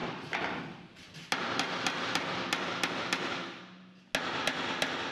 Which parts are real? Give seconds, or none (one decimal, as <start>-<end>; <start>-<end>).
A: 0.6-5.1

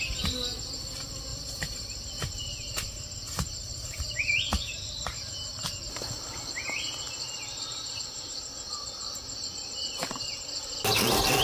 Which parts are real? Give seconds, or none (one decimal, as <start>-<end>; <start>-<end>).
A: 0.0-1.3; 5.8-11.4

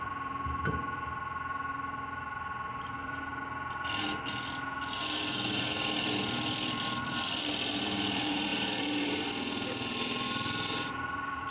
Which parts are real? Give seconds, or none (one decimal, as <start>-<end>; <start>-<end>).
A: 3.3-5.0

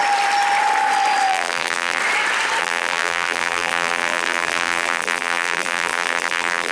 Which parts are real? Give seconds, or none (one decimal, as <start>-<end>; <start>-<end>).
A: 0.0-1.3; 2.0-2.6

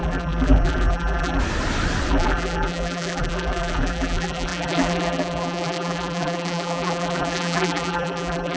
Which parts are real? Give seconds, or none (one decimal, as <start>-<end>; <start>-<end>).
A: 1.4-2.1

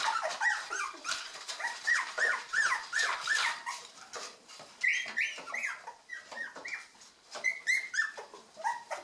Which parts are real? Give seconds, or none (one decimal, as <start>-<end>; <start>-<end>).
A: 4.9-7.4

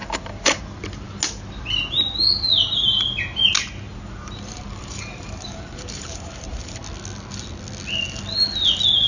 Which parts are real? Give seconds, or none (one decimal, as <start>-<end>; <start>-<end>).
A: 0.6-3.9; 6.8-9.1